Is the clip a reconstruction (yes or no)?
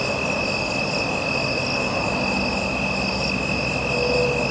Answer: no